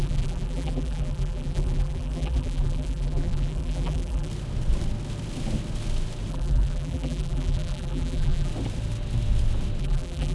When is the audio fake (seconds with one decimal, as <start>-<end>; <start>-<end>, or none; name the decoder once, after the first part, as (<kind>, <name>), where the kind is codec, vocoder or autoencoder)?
0.0-4.3 (vocoder, BigVGAN v2); 6.3-8.5; 9.8-10.3